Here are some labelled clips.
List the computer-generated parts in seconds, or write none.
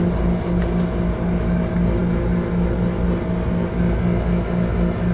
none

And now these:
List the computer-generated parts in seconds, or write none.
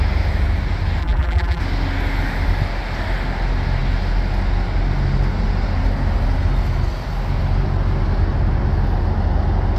1.0-1.6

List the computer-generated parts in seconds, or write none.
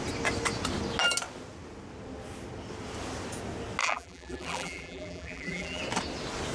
3.8-5.8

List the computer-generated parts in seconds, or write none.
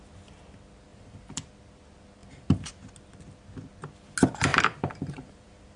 0.9-1.5; 2.2-2.9; 4.5-5.8